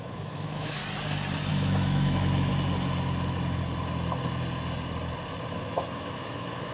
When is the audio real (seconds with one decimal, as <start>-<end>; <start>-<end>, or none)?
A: 0.8-1.5; 2.5-5.5